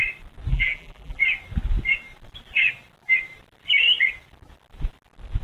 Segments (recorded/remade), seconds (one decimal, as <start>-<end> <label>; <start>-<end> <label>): 0.0-0.5 recorded; 0.5-1.2 remade; 1.2-5.4 recorded